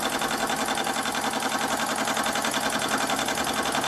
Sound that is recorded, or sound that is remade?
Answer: recorded